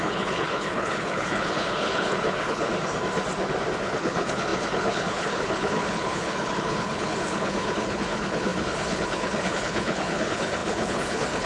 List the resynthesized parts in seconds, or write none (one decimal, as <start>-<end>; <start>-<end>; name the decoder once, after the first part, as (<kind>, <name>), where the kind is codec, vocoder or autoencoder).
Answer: 0.0-2.7 (codec, HILCodec); 3.8-11.5